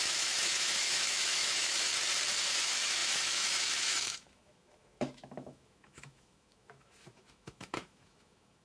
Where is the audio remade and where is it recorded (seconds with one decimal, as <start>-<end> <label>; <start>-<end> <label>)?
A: 0.0-1.9 remade; 1.9-2.5 recorded; 2.5-8.6 remade